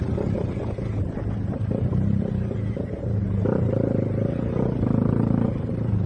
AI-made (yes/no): no